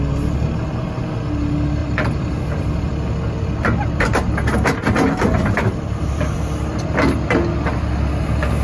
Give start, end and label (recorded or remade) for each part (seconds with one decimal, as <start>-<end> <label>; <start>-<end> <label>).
0.0-1.8 recorded; 1.8-6.8 remade; 6.8-8.6 recorded